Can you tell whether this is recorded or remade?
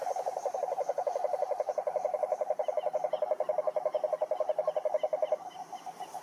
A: recorded